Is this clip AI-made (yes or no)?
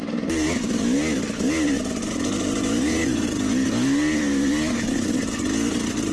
no